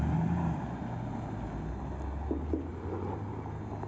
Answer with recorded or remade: recorded